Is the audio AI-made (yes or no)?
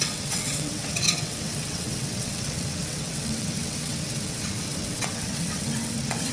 yes